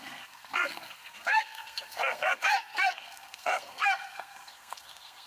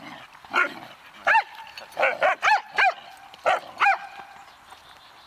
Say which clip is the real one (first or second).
second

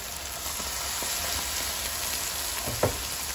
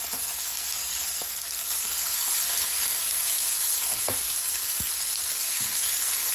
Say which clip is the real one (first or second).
first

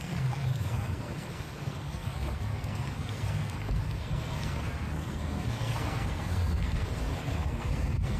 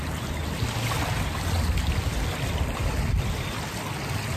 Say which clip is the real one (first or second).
second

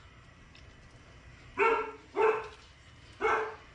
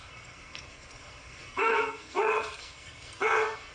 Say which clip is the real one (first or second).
first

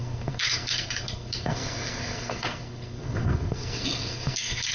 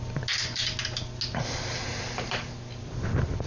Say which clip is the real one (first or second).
second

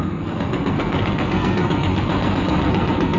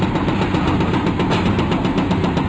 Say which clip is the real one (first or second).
second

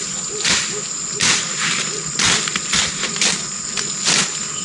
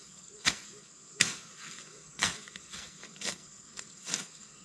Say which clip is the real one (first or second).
first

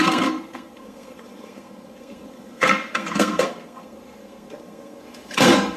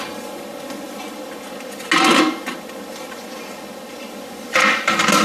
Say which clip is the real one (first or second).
second